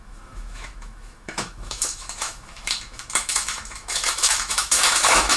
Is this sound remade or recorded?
remade